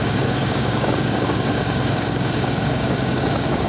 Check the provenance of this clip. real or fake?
fake